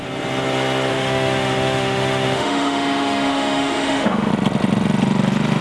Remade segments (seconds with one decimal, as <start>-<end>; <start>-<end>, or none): 0.9-4.3